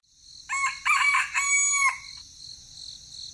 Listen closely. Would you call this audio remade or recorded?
recorded